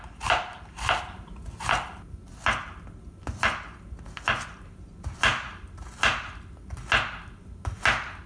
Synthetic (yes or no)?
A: no